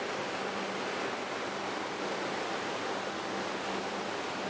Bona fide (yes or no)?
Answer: yes